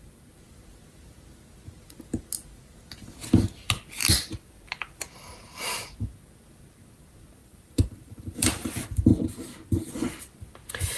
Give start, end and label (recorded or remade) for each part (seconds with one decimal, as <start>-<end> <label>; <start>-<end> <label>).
0.0-7.4 recorded; 7.4-8.7 remade; 8.7-11.0 recorded